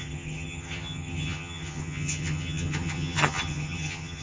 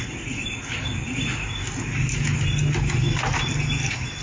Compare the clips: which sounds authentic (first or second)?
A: second